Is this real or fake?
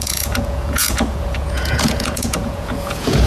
fake